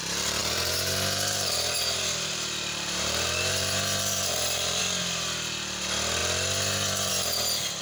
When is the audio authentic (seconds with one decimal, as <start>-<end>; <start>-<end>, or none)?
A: 0.0-0.4; 4.8-7.8